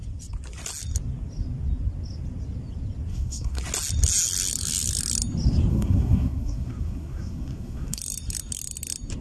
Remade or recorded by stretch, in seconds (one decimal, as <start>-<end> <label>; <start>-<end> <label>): 0.0-3.1 recorded; 3.1-3.6 remade; 3.6-5.7 recorded; 5.7-8.0 remade; 8.0-9.2 recorded